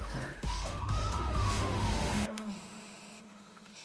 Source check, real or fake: fake